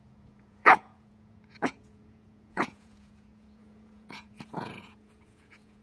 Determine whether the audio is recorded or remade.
remade